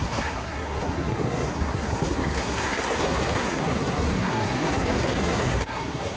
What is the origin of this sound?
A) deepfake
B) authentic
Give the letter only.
A